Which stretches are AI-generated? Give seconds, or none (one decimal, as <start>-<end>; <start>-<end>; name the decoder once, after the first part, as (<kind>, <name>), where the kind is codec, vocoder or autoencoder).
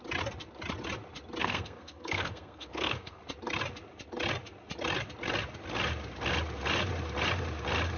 1.4-3.2 (codec, SNAC)